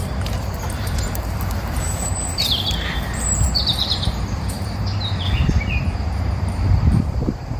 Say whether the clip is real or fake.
fake